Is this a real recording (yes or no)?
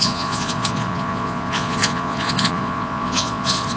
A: no